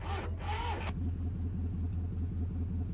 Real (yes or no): yes